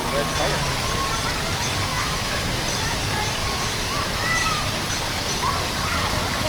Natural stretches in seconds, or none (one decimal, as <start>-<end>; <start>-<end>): 0.0-1.9; 2.6-3.4; 4.6-6.5